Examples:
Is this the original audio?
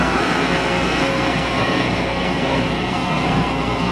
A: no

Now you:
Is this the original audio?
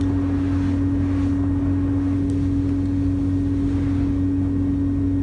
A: yes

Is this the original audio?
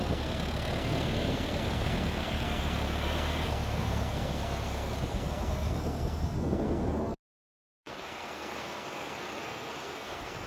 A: no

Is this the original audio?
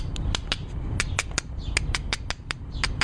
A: yes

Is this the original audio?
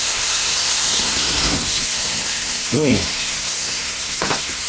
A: no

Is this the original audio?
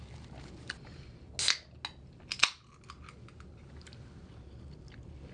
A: yes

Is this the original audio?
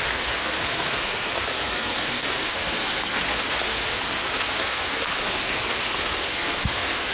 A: no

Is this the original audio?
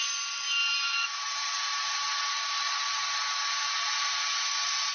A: yes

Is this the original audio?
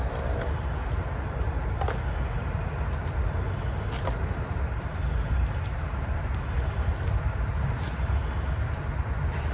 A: yes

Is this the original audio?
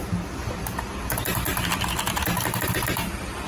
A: yes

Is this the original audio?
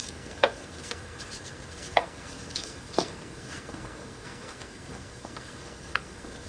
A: no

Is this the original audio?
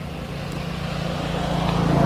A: yes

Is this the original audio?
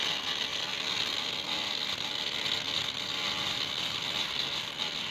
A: yes